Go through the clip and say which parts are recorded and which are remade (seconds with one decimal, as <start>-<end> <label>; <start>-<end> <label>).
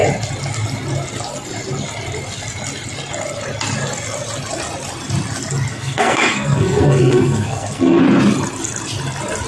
0.0-5.7 recorded; 5.7-8.0 remade; 8.0-9.5 recorded